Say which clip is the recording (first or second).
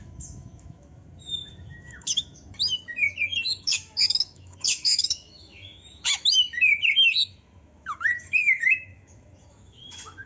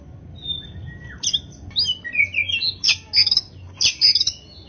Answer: second